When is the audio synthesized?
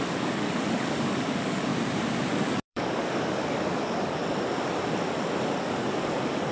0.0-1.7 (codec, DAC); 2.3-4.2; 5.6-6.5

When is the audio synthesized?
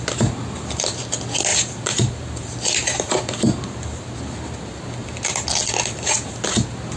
none